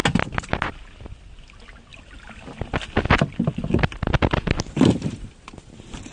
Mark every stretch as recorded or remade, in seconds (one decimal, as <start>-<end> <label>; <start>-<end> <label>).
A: 0.0-6.1 recorded